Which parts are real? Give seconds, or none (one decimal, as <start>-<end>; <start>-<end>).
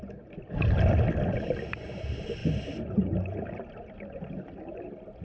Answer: 0.0-2.4; 3.6-5.2